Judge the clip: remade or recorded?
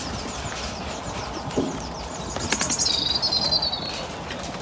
recorded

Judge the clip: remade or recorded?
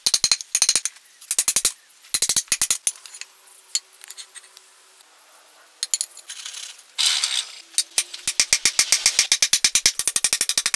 recorded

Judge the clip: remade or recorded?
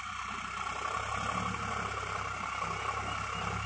recorded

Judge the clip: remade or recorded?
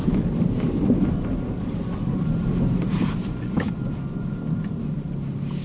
recorded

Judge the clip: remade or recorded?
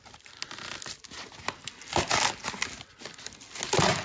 recorded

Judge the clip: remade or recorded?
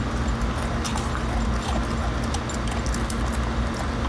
recorded